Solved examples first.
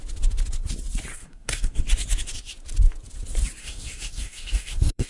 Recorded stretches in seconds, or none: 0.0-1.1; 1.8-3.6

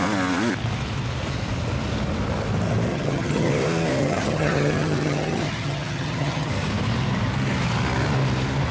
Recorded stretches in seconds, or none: 0.0-2.9; 3.5-4.0; 6.5-8.7